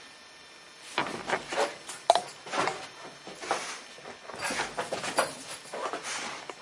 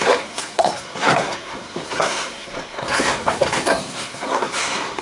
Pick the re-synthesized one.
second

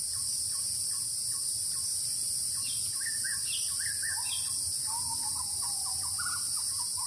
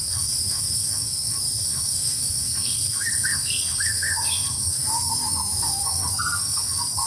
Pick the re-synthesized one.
second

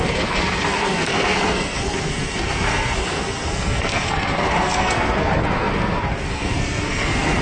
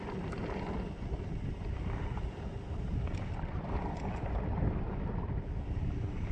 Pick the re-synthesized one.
first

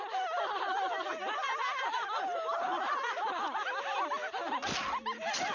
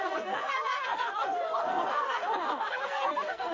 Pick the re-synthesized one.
second